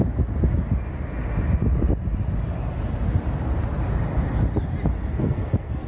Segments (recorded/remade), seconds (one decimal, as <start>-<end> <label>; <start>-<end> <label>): 0.0-5.1 recorded; 5.1-5.9 remade